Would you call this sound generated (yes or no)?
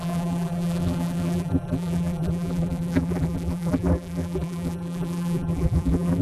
yes